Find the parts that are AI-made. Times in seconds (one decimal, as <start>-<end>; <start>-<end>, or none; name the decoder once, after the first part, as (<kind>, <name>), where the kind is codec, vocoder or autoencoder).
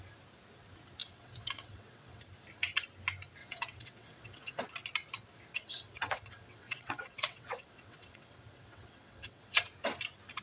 1.0-2.2 (vocoder, WaveNeXt); 3.4-4.6; 5.5-9.7